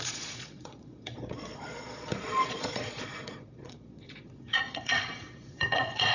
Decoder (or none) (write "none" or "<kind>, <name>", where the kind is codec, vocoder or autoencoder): vocoder, Vocos